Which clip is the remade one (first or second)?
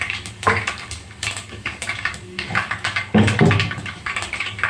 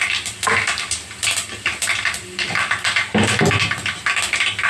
first